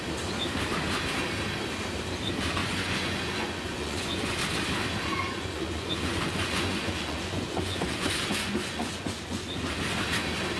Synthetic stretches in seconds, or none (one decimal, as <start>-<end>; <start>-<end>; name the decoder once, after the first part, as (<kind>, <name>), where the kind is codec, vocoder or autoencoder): 2.6-4.3 (vocoder, Vocos); 5.1-9.7